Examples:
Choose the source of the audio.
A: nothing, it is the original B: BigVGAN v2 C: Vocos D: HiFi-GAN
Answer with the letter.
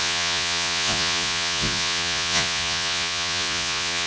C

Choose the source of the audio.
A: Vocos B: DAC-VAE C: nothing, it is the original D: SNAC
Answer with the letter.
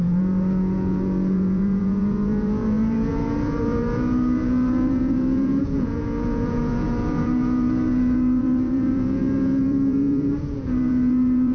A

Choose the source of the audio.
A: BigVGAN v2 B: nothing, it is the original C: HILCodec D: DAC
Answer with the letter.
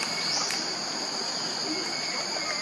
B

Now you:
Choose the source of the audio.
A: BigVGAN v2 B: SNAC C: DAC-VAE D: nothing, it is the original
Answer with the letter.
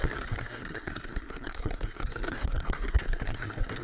B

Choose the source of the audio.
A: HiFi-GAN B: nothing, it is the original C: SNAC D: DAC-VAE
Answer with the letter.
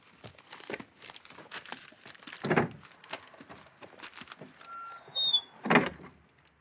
B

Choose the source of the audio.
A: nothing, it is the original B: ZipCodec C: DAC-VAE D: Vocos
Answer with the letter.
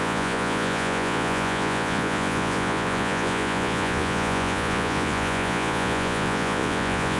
D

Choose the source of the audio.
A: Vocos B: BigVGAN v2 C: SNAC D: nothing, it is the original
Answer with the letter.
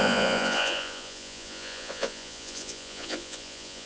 A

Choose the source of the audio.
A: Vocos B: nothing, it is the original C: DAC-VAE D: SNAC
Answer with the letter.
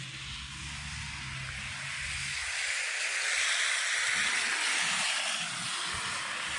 B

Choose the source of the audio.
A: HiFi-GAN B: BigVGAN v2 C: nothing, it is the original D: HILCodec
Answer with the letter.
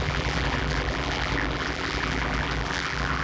B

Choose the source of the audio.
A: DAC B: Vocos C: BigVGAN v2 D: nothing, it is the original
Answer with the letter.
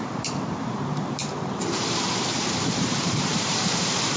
C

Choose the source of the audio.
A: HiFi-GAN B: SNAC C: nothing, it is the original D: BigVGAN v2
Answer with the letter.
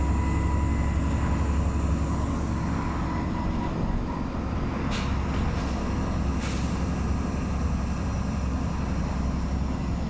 C